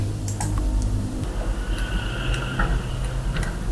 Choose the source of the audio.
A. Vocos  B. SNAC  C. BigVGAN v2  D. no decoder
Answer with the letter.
D